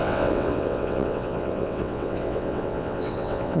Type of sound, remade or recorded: remade